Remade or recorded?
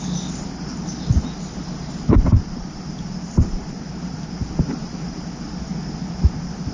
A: recorded